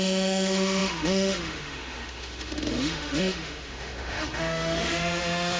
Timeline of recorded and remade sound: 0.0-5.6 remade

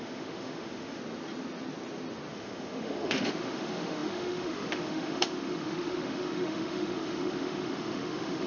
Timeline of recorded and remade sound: 0.0-1.0 remade; 1.0-2.3 recorded; 2.3-8.5 remade

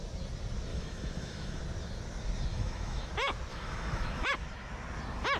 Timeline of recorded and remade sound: 0.0-0.7 recorded; 0.7-1.6 remade; 1.6-2.5 recorded; 2.5-3.1 remade; 3.1-3.5 recorded; 3.5-4.3 remade; 4.3-5.4 recorded

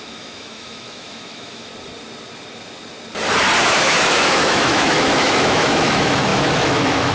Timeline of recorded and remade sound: 0.0-1.7 remade; 1.7-3.6 recorded; 3.6-7.1 remade

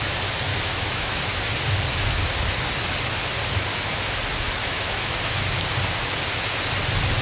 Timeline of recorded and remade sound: 0.0-0.5 recorded; 0.5-1.4 remade; 1.4-4.6 recorded; 4.6-5.5 remade; 5.5-7.2 recorded

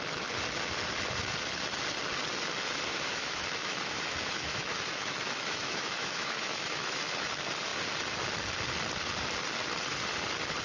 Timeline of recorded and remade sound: 0.0-2.9 recorded; 2.9-7.0 remade; 7.0-10.6 recorded